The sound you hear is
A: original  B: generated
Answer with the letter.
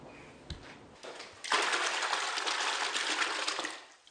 A